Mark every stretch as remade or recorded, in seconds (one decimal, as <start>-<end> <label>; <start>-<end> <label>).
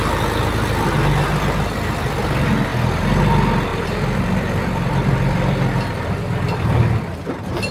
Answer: 0.0-3.7 recorded; 3.7-6.2 remade; 6.2-7.7 recorded